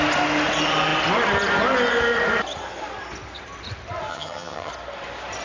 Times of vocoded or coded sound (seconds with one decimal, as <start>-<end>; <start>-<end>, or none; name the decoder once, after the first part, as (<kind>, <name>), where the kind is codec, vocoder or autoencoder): 4.1-4.7 (vocoder, HiFi-GAN)